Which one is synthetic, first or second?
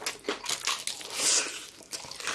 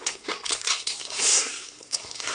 second